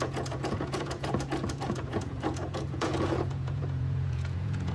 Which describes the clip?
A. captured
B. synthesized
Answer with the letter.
B